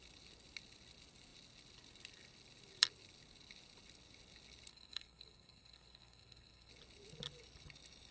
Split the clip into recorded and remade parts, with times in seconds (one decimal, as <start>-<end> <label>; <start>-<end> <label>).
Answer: 0.0-4.7 recorded; 4.7-6.7 remade; 6.7-8.1 recorded